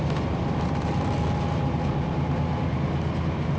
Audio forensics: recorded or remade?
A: recorded